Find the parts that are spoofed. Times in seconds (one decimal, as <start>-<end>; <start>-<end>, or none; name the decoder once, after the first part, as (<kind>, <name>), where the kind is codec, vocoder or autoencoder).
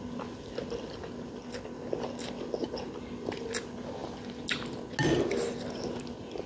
none